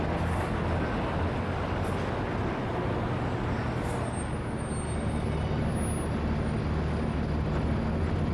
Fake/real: real